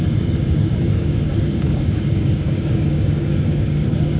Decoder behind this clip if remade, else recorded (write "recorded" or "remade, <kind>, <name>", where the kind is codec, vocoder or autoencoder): remade, codec, DAC